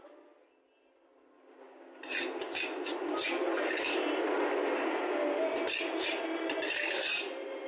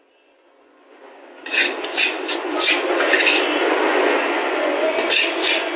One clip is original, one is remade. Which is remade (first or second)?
second